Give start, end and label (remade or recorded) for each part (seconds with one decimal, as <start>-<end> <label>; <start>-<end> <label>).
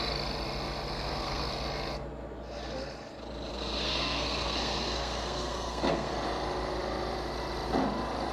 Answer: 0.0-0.9 recorded; 0.9-1.5 remade; 1.5-3.5 recorded; 3.5-6.1 remade; 6.1-8.3 recorded